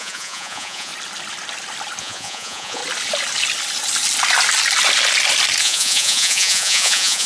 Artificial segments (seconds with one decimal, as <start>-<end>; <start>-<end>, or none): 0.0-0.9; 2.0-2.8; 5.6-7.3